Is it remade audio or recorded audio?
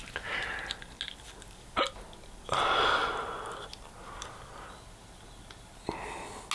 recorded